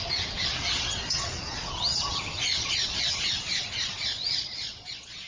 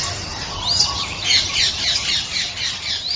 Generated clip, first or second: first